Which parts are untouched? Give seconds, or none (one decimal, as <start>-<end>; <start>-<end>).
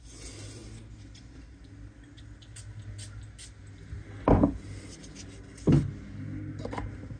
0.0-7.2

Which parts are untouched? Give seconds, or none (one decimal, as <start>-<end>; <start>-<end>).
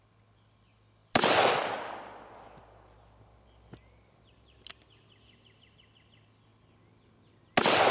0.0-7.9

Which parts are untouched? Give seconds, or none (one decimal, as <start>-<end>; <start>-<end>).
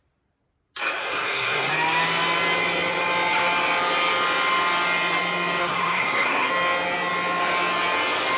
0.0-1.0; 1.7-5.6; 6.5-8.4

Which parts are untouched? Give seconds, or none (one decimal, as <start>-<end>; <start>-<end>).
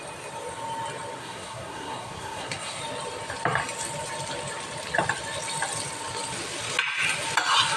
0.0-1.2; 2.8-7.8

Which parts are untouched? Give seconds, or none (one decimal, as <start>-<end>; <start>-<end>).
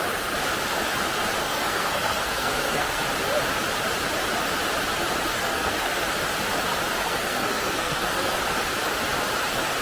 0.0-1.4; 3.0-5.3; 6.0-7.0; 8.4-9.8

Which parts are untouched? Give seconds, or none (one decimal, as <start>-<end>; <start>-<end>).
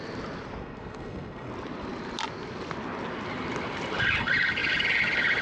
0.0-0.6; 1.5-5.4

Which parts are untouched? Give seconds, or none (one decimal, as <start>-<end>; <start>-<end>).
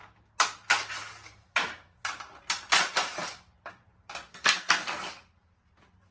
0.0-4.3; 5.0-6.1